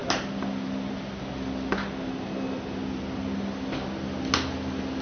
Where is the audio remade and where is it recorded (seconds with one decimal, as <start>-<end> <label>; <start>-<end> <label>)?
0.0-5.0 recorded